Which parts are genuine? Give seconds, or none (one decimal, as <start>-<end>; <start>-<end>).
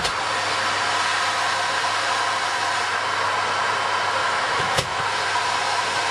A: 0.0-4.2; 5.0-6.1